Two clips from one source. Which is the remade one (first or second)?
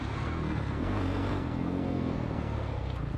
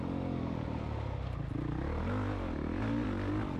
first